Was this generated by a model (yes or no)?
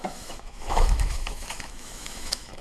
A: yes